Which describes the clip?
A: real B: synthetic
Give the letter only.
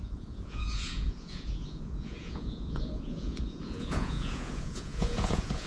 B